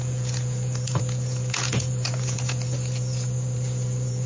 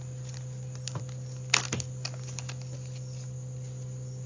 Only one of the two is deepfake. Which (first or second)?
first